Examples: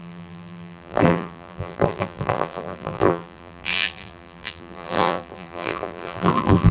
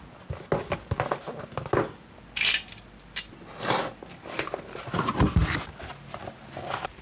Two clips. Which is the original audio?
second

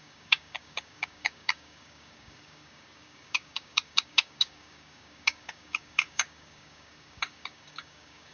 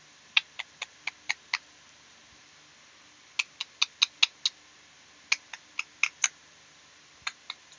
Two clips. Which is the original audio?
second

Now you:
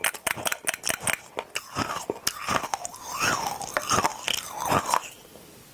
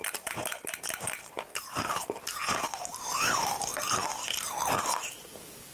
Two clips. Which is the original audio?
first